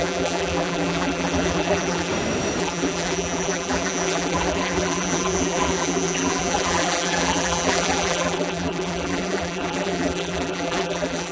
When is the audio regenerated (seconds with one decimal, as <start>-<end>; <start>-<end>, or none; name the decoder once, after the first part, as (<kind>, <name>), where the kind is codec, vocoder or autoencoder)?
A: 0.0-2.1 (vocoder, BigVGAN v2); 2.6-11.3